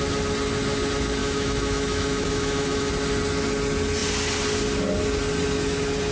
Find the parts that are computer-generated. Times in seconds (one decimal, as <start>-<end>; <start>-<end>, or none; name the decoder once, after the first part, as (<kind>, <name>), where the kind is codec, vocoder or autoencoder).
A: 1.2-2.9 (autoencoder, DAC-VAE)